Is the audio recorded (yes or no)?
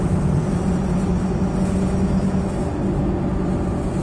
yes